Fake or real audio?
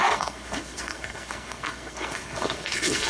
fake